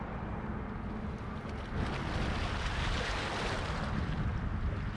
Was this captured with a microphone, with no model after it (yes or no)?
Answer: yes